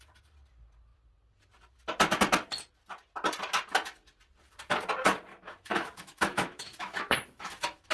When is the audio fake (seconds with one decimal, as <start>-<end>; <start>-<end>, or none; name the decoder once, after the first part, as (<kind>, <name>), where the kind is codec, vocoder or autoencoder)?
5.3-7.9 (autoencoder, DAC-VAE)